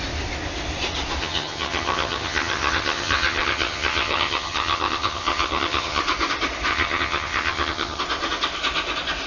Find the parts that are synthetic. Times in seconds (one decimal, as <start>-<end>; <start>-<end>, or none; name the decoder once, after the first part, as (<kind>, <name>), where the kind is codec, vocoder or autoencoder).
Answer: 1.2-6.0 (vocoder, HiFi-GAN); 6.7-8.0